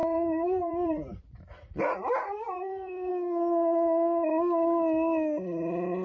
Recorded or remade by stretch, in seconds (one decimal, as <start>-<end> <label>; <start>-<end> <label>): 0.0-3.1 remade; 3.1-6.0 recorded

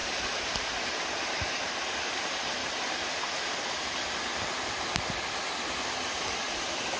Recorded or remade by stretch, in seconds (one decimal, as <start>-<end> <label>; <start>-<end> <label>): 0.0-7.0 recorded

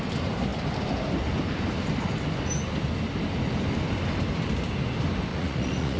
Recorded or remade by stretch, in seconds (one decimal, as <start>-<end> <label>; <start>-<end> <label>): 0.0-5.3 recorded; 5.3-6.0 remade

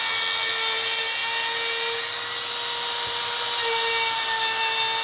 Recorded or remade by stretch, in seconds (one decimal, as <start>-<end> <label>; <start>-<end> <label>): 0.0-5.0 recorded

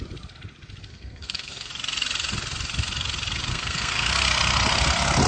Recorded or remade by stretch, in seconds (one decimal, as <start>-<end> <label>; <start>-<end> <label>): 0.0-0.9 recorded; 0.9-1.7 remade; 1.7-3.5 recorded; 3.5-4.1 remade; 4.1-5.3 recorded

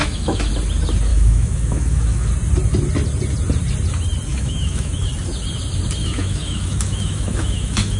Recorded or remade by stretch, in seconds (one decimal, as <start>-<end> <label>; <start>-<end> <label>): 0.0-0.5 remade; 0.5-1.1 recorded; 1.1-2.3 remade; 2.3-4.3 recorded; 4.3-5.1 remade; 5.1-6.0 recorded; 6.0-8.0 remade

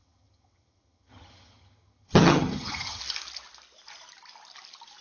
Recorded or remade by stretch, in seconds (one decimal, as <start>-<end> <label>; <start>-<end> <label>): 0.0-3.0 remade; 3.0-5.0 recorded

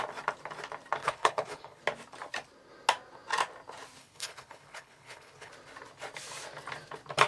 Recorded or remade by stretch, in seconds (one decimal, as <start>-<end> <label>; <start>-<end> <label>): 0.0-1.0 recorded; 1.0-1.8 remade; 1.8-4.0 recorded; 4.0-5.5 remade; 5.5-7.3 recorded